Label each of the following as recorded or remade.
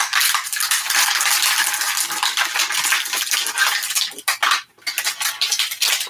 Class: recorded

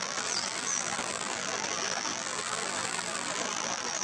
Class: remade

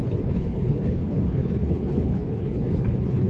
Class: remade